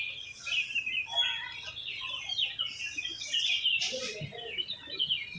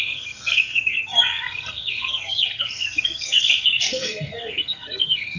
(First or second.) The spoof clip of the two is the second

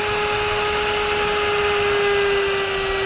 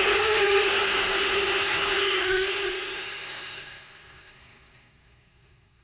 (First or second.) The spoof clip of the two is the second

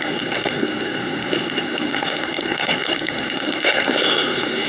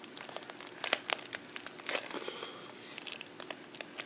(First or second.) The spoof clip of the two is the first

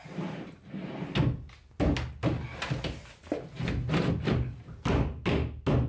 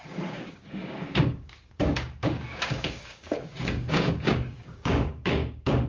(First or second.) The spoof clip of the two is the second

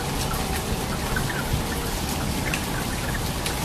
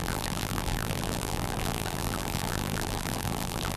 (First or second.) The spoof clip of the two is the second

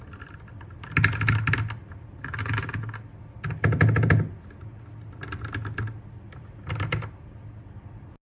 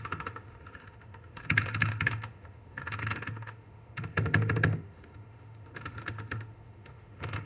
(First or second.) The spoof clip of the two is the second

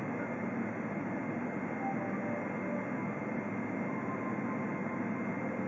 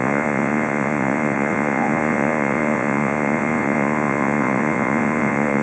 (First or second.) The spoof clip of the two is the second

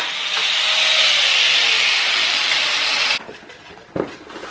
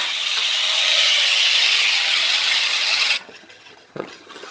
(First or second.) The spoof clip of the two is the second